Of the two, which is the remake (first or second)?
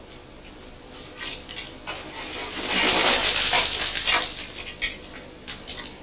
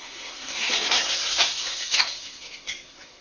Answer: second